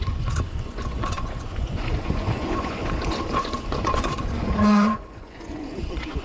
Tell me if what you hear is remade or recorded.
remade